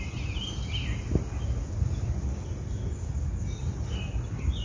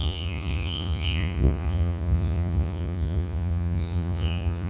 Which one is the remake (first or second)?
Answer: second